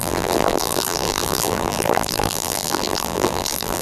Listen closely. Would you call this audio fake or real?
fake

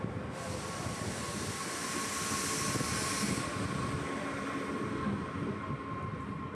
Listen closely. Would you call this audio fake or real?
real